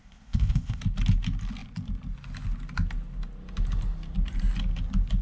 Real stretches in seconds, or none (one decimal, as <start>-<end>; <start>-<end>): 0.8-5.2